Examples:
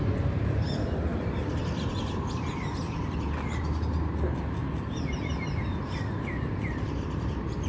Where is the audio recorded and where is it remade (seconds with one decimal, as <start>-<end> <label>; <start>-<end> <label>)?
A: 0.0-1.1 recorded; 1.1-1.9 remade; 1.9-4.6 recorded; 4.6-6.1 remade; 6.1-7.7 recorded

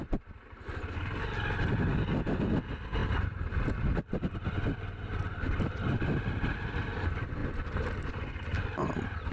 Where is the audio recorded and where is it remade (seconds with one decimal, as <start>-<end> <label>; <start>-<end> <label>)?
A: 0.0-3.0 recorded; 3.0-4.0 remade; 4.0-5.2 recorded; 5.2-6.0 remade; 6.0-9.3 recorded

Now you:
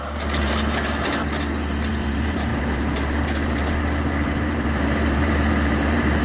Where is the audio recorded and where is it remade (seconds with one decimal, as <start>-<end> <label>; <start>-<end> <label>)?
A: 0.0-1.1 remade; 1.1-1.9 recorded; 1.9-6.2 remade

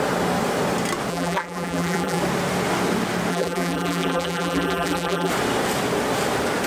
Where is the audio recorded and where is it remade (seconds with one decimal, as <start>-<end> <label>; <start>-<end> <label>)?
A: 0.0-1.1 recorded; 1.1-2.2 remade; 2.2-3.3 recorded; 3.3-5.3 remade; 5.3-6.7 recorded

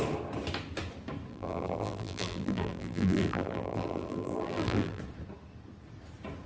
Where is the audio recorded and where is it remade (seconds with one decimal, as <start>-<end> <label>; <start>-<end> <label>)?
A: 0.0-1.3 recorded; 1.3-5.0 remade; 5.0-6.5 recorded

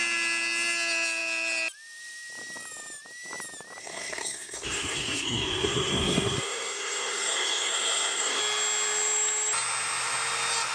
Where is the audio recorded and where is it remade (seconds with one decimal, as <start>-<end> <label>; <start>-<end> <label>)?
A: 0.0-3.8 recorded; 3.8-8.4 remade; 8.4-10.7 recorded

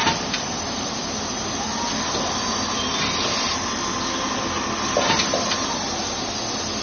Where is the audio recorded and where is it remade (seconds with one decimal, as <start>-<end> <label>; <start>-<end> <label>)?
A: 0.0-6.8 recorded